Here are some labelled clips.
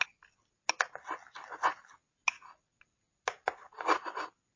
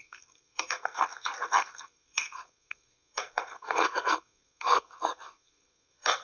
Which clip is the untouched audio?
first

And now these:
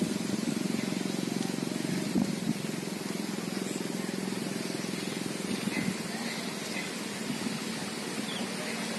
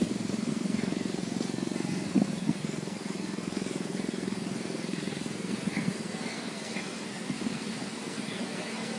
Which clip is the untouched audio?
first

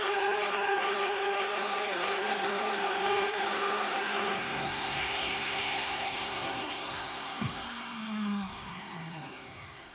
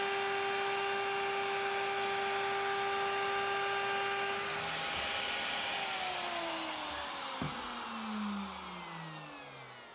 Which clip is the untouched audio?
second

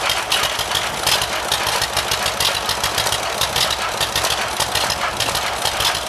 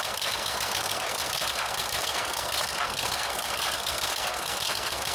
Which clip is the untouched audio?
first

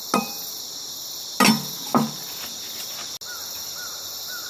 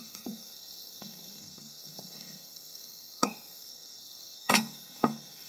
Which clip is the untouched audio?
first